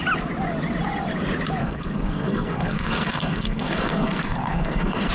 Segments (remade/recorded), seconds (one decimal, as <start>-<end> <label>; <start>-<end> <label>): 0.0-1.6 recorded; 1.6-5.1 remade